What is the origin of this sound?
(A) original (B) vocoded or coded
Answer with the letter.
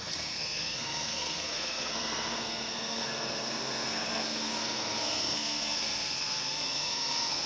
B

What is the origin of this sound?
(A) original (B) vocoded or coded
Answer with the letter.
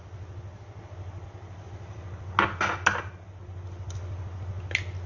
A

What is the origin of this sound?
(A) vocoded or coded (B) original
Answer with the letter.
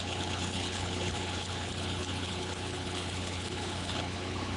A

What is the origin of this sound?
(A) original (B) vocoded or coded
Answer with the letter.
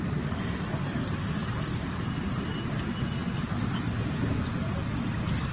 B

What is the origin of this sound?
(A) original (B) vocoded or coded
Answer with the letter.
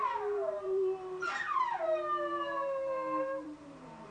B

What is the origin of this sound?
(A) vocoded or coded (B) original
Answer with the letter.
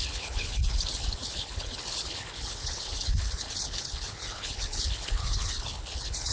A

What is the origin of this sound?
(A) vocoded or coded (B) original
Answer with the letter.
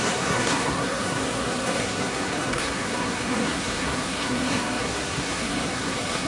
A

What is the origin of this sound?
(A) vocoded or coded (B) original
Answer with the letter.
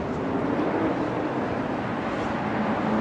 B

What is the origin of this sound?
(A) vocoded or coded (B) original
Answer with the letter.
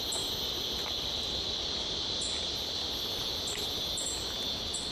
B